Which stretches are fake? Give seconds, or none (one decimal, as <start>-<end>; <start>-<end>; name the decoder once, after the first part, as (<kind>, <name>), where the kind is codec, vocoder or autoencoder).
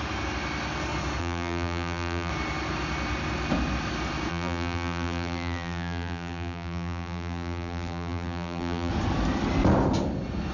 1.2-2.3 (vocoder, BigVGAN v2); 4.3-8.9